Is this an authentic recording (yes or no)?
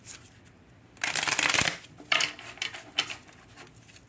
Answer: no